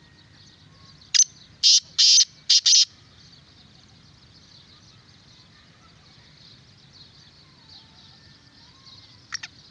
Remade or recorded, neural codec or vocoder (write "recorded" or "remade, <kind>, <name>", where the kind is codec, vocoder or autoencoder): recorded